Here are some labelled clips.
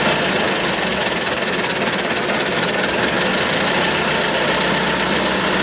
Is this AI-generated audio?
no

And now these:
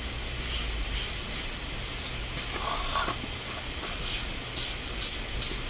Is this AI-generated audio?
no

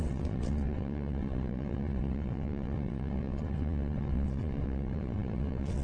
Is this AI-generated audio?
yes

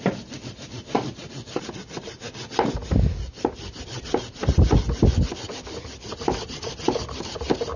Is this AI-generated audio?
no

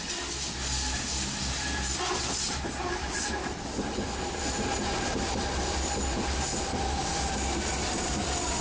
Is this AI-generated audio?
no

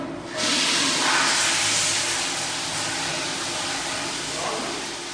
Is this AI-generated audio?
no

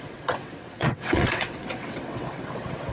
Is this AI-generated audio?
yes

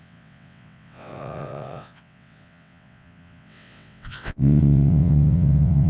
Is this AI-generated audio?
yes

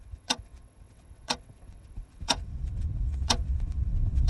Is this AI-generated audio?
yes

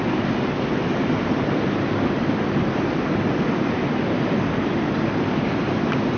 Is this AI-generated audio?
no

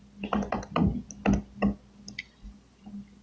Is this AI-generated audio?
no